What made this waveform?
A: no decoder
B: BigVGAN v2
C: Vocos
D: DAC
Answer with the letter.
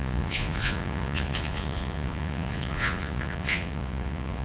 C